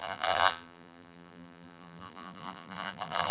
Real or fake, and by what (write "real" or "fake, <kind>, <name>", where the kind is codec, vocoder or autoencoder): fake, vocoder, BigVGAN v2